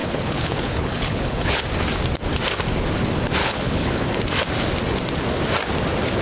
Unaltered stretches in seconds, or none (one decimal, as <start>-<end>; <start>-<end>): 1.6-3.4; 4.2-6.2